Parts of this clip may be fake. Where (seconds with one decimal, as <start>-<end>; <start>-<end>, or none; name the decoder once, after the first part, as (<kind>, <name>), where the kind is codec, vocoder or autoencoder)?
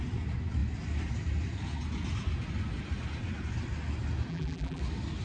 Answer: 4.3-4.8 (vocoder, BigVGAN v2)